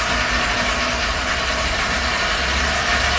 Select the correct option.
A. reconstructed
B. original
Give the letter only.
A